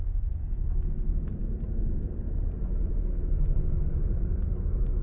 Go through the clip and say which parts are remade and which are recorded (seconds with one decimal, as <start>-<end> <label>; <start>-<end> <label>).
0.0-5.0 recorded